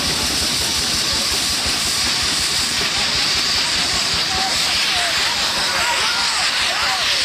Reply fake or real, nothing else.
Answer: real